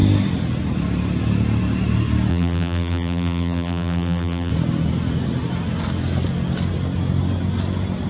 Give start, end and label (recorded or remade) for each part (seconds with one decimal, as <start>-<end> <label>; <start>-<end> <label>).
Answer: 0.0-2.3 recorded; 2.3-4.5 remade; 4.5-8.1 recorded